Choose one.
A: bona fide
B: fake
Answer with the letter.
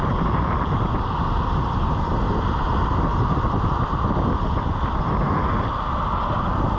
A